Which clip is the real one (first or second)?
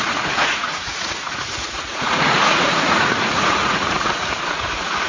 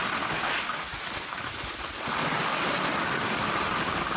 second